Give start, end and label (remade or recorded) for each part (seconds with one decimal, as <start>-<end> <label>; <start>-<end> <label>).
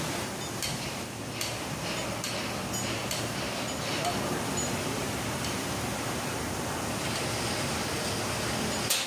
0.0-9.1 recorded